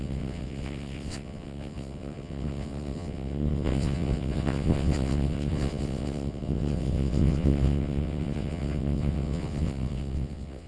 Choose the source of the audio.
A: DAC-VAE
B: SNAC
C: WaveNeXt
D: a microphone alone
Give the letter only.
C